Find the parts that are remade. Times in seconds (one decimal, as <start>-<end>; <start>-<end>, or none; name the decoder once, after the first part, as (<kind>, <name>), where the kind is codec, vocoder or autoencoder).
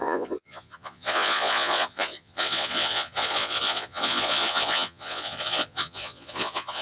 0.0-6.8 (vocoder, Vocos)